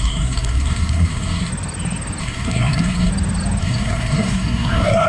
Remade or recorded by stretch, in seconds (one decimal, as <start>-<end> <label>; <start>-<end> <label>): 0.0-1.5 remade; 1.5-2.2 recorded; 2.2-3.1 remade; 3.1-3.6 recorded; 3.6-5.1 remade